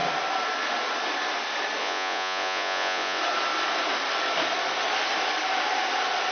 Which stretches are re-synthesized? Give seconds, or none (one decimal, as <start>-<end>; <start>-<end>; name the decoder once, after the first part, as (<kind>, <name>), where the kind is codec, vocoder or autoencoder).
1.8-3.2 (vocoder, Vocos)